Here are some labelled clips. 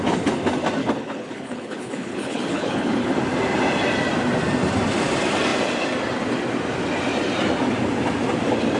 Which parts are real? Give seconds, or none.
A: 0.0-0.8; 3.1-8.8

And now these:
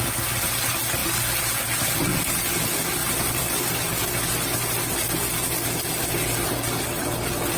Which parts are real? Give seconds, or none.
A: 0.0-2.1; 2.6-3.0; 3.7-7.6

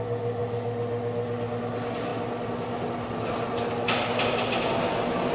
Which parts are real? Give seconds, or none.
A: 0.0-5.3

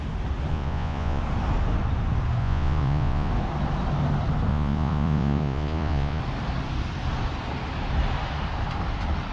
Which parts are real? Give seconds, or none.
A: 0.0-0.5; 1.2-2.4; 3.3-4.5; 6.2-9.3

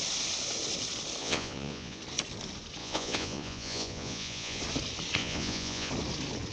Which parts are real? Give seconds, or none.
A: 0.0-1.2; 2.0-2.8; 4.6-5.2; 5.9-6.5

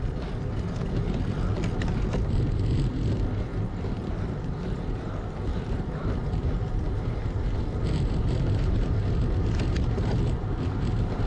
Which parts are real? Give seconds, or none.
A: 0.0-3.5; 5.1-5.5; 9.0-11.3